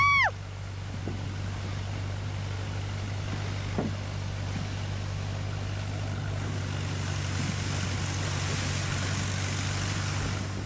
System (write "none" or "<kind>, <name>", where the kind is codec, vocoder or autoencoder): none